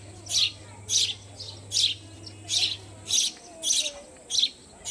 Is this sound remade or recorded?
recorded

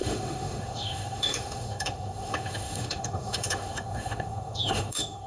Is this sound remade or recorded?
remade